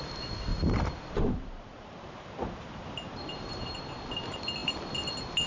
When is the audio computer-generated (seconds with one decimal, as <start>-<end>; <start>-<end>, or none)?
0.5-3.8